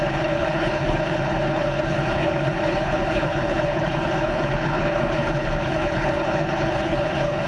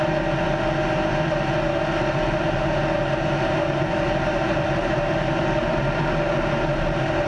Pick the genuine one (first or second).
second